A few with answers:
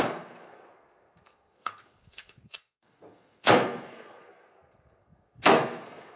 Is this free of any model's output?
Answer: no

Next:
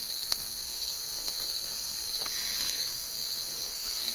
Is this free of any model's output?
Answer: no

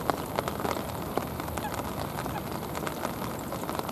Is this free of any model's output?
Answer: yes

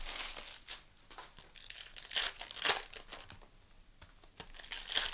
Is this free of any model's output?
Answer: yes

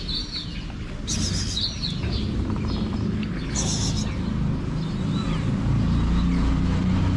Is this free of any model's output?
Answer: yes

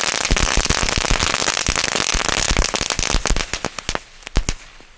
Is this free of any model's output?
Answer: yes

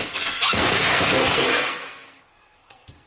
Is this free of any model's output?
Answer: no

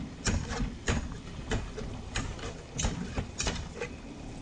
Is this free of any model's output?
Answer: yes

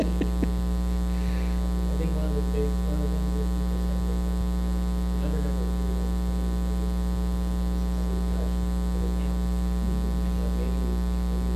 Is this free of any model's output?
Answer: yes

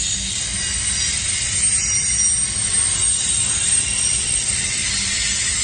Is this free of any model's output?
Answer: yes